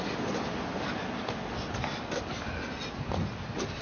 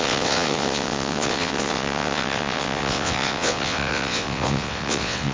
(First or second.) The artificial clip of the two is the second